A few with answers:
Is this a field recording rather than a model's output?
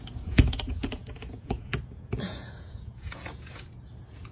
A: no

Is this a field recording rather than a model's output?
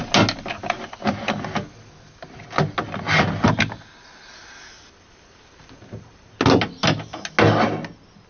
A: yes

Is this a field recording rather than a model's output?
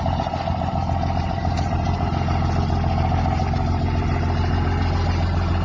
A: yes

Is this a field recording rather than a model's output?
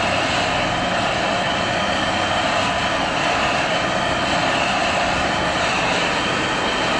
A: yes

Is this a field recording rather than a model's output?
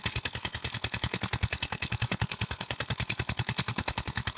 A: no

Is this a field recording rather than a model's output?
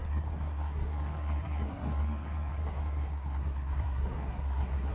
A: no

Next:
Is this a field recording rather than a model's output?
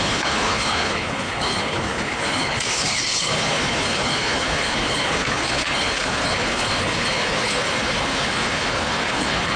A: no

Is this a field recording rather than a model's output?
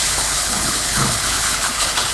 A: no